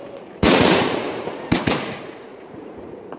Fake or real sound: fake